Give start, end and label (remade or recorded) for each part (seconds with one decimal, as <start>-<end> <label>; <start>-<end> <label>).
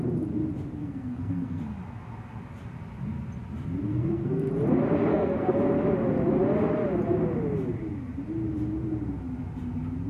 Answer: 0.0-0.8 recorded; 0.8-1.6 remade; 1.6-3.9 recorded; 3.9-4.5 remade; 4.5-5.1 recorded; 5.1-5.6 remade; 5.6-10.1 recorded